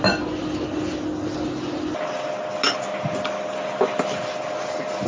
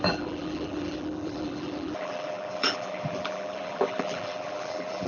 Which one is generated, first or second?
second